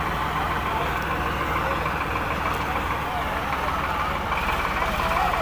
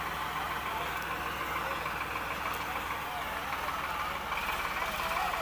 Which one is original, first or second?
second